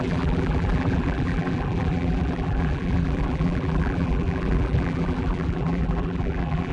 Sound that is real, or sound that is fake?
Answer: fake